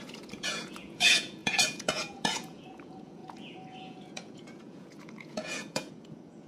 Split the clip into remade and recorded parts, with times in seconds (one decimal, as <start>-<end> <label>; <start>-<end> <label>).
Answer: 0.0-6.5 remade